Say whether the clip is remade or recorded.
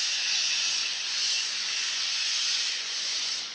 remade